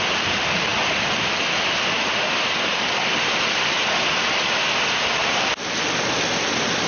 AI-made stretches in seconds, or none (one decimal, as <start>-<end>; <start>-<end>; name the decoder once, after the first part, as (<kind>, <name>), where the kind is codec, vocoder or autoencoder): none